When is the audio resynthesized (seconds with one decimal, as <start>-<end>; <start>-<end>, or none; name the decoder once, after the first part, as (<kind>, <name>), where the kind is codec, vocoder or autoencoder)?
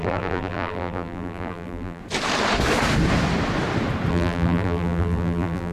0.0-2.0 (vocoder, BigVGAN v2); 4.1-5.7